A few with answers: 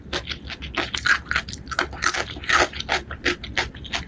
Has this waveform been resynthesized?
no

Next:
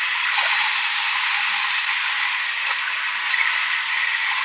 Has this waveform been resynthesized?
no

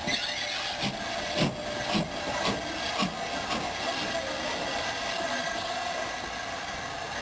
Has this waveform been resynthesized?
no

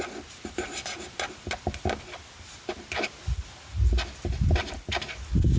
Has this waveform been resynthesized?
no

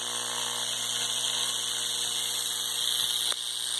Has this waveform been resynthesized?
no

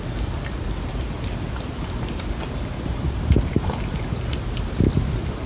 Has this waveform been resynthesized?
no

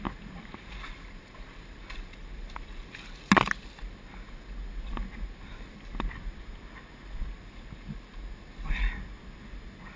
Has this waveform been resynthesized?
no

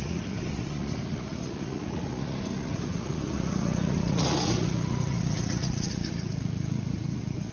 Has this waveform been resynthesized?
yes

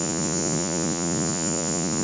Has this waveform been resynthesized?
yes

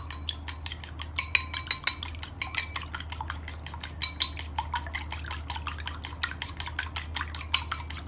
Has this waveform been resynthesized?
no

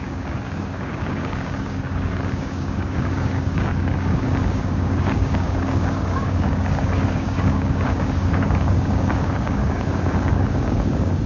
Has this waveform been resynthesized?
yes